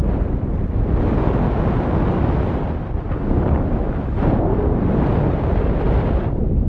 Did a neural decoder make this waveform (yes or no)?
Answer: no